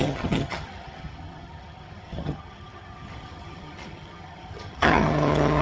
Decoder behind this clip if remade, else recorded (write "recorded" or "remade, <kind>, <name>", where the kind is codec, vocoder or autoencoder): remade, vocoder, HiFi-GAN